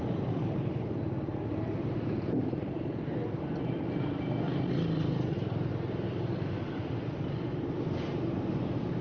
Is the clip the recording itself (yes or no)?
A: yes